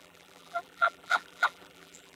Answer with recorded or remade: remade